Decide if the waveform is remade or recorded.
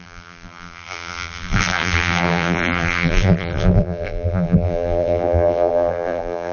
remade